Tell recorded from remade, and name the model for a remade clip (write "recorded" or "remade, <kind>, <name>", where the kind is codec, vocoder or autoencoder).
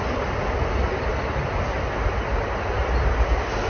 recorded